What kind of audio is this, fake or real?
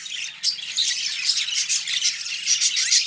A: fake